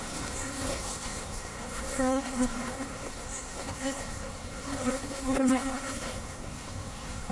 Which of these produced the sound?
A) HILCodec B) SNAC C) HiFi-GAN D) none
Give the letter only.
B